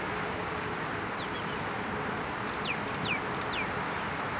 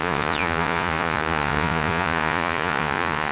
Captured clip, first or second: first